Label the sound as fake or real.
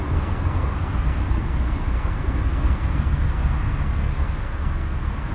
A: fake